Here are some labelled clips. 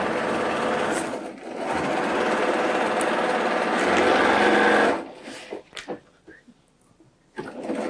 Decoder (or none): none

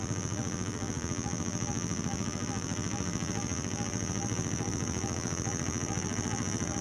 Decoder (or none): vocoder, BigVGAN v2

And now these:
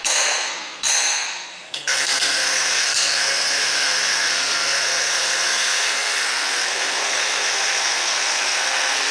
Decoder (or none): codec, SNAC